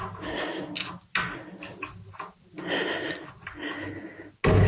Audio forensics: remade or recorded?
recorded